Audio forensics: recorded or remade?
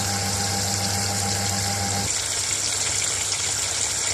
recorded